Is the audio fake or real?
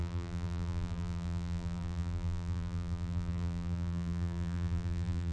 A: fake